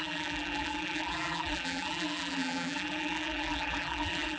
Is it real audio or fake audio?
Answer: fake